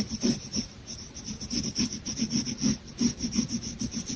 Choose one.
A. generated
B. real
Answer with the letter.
B